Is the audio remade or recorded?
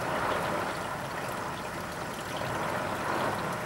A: recorded